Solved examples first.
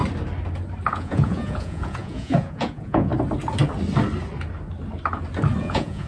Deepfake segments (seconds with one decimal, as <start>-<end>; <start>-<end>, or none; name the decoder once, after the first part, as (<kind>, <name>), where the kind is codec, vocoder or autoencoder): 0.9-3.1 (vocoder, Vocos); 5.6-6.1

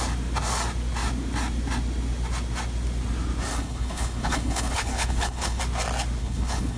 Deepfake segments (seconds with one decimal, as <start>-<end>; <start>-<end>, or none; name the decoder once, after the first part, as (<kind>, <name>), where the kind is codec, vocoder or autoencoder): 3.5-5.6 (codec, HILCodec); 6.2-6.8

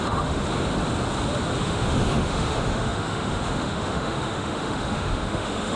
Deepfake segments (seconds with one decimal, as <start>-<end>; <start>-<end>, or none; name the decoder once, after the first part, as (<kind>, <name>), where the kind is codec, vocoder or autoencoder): 0.0-0.4 (autoencoder, DAC-VAE); 1.6-5.8